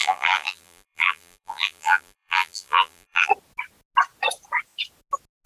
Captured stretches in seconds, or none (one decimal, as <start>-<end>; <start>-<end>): 3.3-5.5